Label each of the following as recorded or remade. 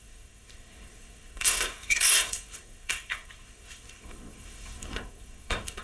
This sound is remade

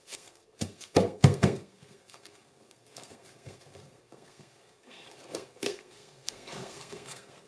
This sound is remade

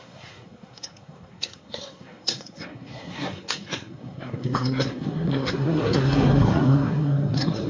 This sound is remade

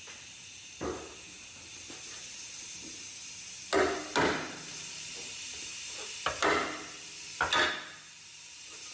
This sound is recorded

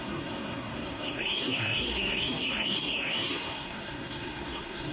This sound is remade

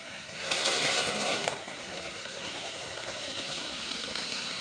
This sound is remade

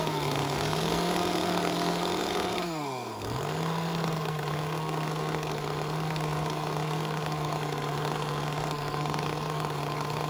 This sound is remade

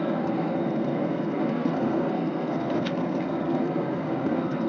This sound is remade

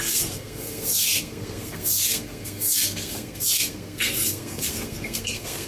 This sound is remade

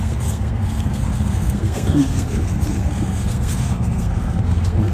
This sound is remade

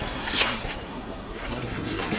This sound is remade